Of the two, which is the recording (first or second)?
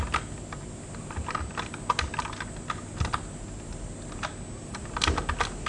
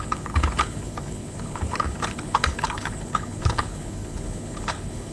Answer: first